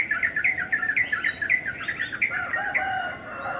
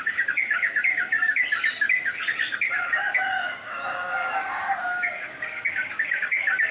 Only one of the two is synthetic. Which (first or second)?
second